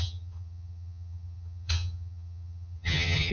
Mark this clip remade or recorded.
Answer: remade